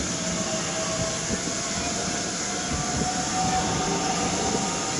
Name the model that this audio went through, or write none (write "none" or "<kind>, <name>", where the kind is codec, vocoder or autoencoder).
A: none